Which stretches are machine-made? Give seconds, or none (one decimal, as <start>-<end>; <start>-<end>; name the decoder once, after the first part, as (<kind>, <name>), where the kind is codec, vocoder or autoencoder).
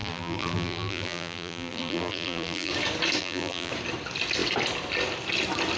0.0-2.7 (vocoder, BigVGAN v2); 3.2-3.7